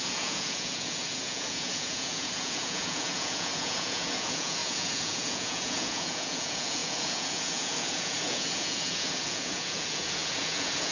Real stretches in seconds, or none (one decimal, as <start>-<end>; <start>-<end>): none